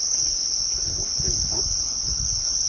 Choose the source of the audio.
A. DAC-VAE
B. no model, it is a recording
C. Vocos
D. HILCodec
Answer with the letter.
D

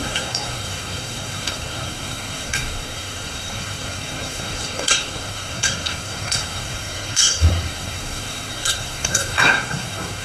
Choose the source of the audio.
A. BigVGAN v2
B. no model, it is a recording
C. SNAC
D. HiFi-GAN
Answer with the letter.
C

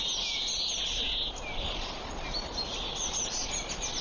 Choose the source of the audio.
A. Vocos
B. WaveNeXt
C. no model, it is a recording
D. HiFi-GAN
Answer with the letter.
C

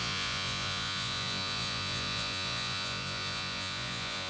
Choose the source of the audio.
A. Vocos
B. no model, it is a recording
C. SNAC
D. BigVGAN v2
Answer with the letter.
A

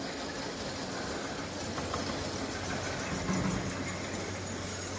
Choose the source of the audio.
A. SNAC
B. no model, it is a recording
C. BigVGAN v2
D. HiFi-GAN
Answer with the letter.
B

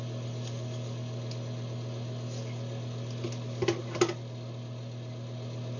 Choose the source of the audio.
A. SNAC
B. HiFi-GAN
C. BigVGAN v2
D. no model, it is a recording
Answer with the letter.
D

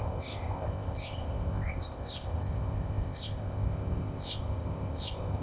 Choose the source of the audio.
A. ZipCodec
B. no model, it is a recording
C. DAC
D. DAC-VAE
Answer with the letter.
A